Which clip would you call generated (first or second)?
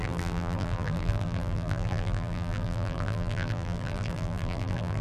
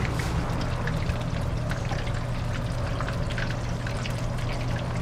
first